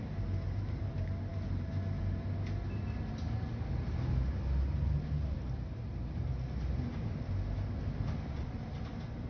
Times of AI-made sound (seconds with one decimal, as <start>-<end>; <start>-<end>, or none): none